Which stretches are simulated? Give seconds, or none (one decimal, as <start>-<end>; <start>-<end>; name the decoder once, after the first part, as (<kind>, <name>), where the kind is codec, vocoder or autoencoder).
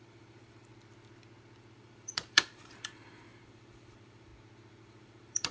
0.0-0.7 (vocoder, BigVGAN v2); 1.7-4.3; 4.8-5.5